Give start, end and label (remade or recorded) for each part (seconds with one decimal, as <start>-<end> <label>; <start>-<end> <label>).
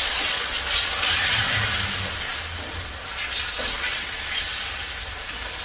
0.0-1.4 remade; 1.4-3.6 recorded; 3.6-4.2 remade; 4.2-5.6 recorded